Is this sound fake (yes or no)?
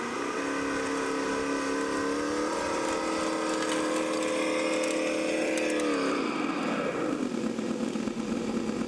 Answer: no